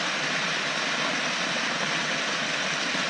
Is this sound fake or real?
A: real